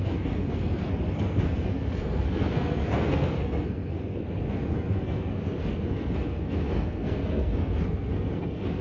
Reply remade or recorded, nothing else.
remade